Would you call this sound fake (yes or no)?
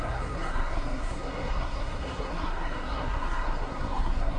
yes